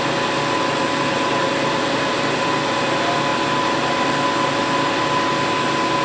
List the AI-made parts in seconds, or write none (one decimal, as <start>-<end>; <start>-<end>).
none